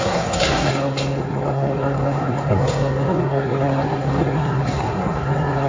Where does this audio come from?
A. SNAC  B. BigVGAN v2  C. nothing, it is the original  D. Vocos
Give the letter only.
A